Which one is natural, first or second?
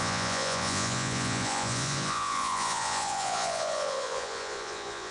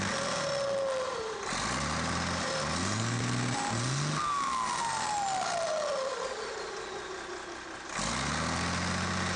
second